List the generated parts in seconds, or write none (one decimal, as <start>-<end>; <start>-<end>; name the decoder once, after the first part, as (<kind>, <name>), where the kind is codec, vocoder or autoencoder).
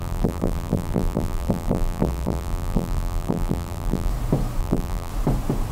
0.0-4.1 (vocoder, BigVGAN v2); 4.6-5.1